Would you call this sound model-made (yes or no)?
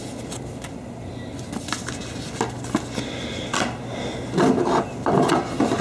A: no